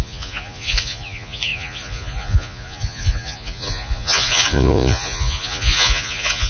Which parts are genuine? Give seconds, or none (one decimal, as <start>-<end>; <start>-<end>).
none